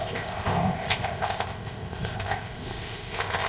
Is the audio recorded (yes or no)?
no